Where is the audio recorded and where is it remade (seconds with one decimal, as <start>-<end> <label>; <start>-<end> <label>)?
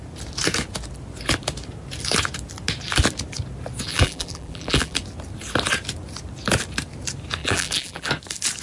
0.0-3.9 recorded; 3.9-5.0 remade; 5.0-7.4 recorded; 7.4-8.1 remade; 8.1-8.6 recorded